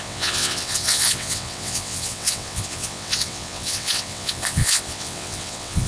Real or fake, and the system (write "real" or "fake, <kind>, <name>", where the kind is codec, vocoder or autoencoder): fake, vocoder, WaveNeXt